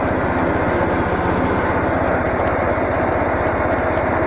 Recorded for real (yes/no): yes